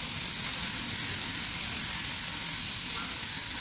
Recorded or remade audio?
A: recorded